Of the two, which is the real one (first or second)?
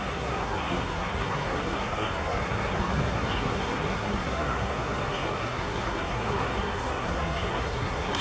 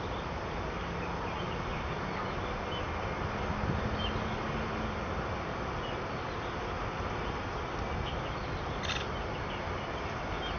second